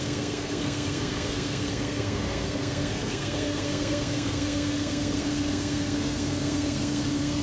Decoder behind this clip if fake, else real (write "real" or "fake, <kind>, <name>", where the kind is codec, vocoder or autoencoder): fake, codec, SNAC